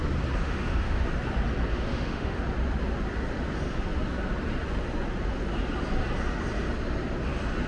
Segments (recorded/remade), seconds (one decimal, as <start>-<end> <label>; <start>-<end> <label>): 0.0-0.4 recorded; 0.4-1.0 remade; 1.0-1.7 recorded; 1.7-2.4 remade; 2.4-7.7 recorded